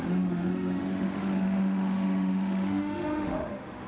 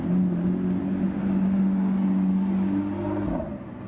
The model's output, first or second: first